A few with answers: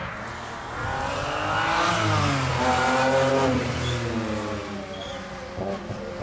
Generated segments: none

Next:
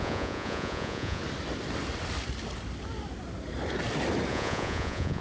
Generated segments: 0.0-1.2 (vocoder, Vocos); 4.3-5.2